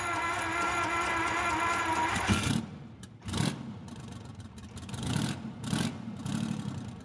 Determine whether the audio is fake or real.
real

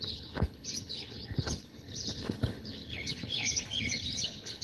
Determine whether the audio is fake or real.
fake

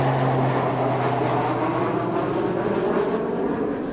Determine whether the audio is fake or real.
real